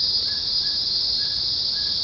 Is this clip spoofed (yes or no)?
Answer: no